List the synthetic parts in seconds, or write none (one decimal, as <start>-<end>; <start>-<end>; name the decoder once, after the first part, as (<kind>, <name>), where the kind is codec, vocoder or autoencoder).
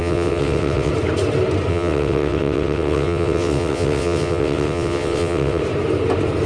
0.0-0.9 (vocoder, WaveNeXt); 1.7-5.6